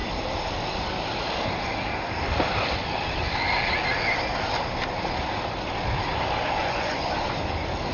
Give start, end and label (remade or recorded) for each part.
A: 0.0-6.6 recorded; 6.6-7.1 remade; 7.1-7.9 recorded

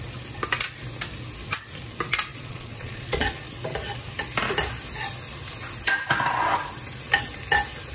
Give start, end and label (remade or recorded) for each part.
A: 0.0-2.3 recorded; 2.3-3.4 remade; 3.4-7.9 recorded

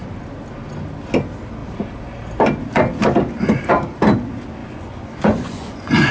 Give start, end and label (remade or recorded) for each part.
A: 0.0-4.6 recorded; 4.6-6.1 remade

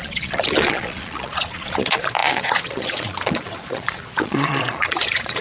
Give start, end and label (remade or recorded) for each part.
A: 0.0-5.4 remade

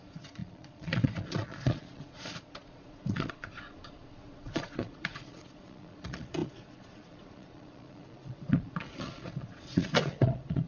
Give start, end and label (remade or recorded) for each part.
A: 0.0-10.7 remade

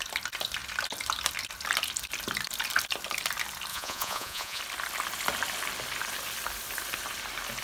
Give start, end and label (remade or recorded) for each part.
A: 0.0-3.7 recorded; 3.7-4.6 remade; 4.6-7.6 recorded

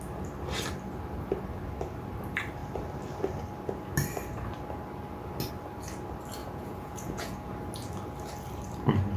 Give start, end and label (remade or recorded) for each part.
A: 0.0-6.4 recorded; 6.4-7.5 remade; 7.5-9.2 recorded

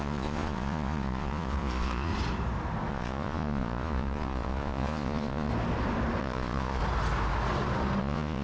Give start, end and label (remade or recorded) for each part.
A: 0.0-2.1 remade; 2.1-2.9 recorded; 2.9-5.5 remade; 5.5-6.2 recorded; 6.2-6.8 remade; 6.8-8.0 recorded; 8.0-8.4 remade